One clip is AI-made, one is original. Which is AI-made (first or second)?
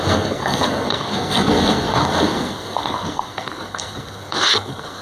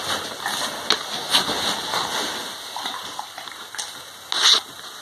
first